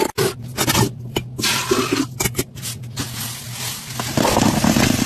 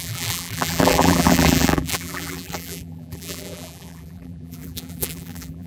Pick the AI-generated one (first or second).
second